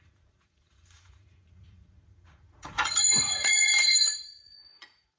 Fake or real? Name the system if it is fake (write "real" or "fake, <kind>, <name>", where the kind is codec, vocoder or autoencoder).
fake, vocoder, Vocos